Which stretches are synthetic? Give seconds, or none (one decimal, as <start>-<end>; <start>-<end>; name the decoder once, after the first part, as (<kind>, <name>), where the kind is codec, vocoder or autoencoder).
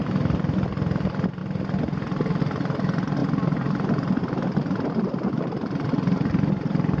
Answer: 0.0-1.4 (vocoder, BigVGAN v2); 2.4-3.2; 4.2-7.0